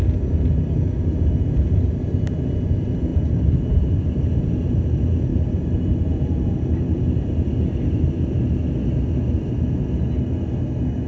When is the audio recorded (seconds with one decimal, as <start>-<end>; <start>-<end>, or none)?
0.0-3.1; 4.2-5.3; 7.0-11.1